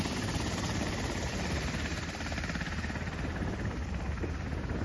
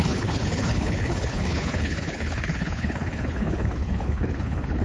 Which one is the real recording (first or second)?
first